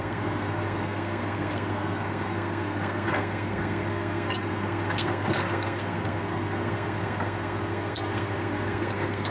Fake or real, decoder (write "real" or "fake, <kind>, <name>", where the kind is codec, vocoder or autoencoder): fake, codec, SNAC